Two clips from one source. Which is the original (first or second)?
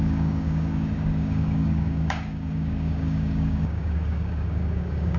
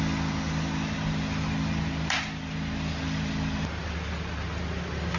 second